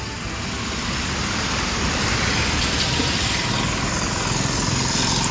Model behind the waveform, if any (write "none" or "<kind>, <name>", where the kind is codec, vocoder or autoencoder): none